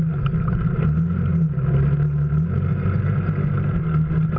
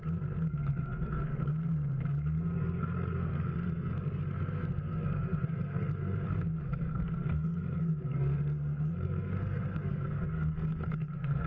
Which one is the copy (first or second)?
second